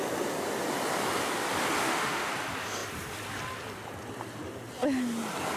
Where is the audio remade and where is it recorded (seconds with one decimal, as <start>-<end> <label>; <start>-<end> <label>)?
0.0-1.8 recorded; 1.8-2.3 remade; 2.3-5.6 recorded